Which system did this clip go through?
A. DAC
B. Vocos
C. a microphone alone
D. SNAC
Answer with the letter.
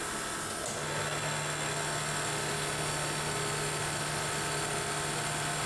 C